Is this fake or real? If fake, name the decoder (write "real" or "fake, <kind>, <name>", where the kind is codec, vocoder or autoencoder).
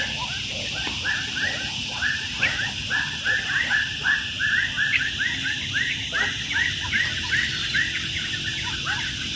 real